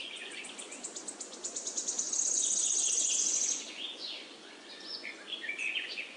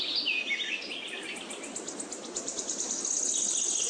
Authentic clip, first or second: second